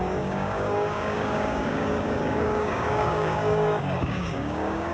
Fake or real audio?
fake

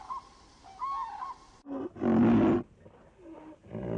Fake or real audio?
real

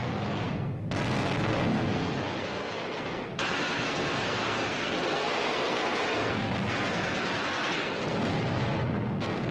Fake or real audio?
fake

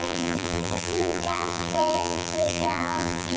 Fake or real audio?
fake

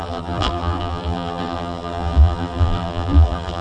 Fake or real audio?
fake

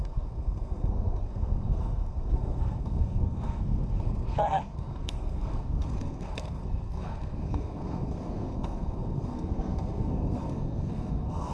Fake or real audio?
fake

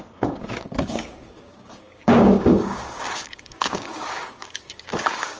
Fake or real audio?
fake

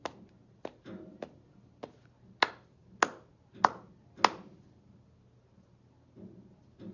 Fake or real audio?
real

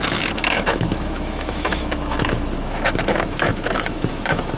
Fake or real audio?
fake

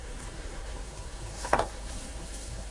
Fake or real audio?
fake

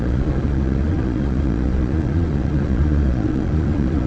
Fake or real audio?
fake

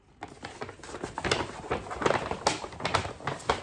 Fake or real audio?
real